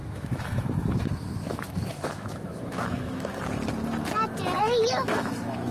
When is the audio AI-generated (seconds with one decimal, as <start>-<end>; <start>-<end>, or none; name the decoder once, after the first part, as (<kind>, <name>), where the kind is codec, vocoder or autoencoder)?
0.0-3.4 (autoencoder, DAC-VAE); 4.6-5.7